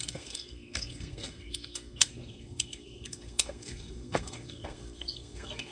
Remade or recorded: remade